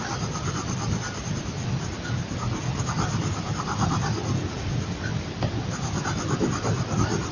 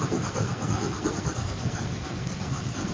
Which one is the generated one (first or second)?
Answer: second